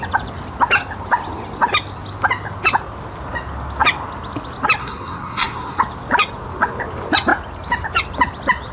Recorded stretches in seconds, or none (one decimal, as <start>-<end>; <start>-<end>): 0.0-4.8; 5.8-8.7